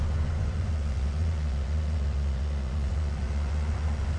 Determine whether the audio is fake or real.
fake